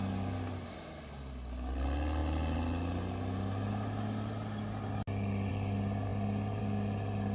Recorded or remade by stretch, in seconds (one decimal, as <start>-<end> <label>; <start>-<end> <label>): 0.0-7.3 recorded